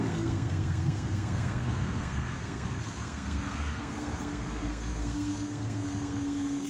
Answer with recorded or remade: remade